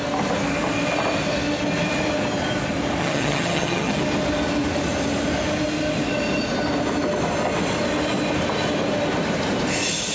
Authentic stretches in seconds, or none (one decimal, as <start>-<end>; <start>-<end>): 0.0-3.0; 4.0-10.1